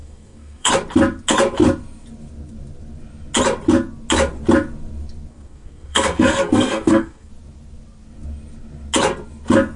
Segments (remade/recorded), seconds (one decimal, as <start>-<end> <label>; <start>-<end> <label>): 0.0-0.7 remade; 0.7-5.3 recorded; 5.3-7.3 remade; 7.3-9.8 recorded